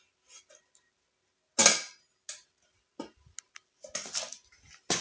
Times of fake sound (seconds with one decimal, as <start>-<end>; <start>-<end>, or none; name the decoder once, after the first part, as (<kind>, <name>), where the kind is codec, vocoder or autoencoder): none